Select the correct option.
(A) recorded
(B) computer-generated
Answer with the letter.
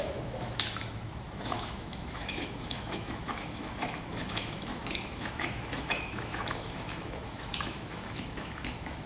B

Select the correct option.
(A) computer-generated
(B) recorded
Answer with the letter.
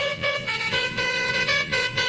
A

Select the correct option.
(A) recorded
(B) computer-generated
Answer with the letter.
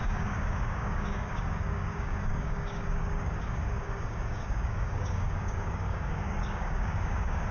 B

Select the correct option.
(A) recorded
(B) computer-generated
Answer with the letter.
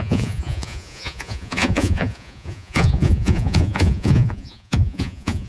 B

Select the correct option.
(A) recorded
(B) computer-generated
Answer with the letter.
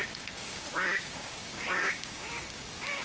B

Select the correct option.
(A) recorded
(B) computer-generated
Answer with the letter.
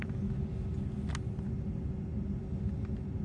A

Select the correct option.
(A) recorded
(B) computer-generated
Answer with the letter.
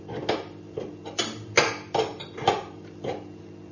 A